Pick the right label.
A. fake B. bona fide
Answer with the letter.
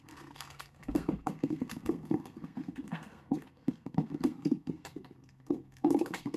A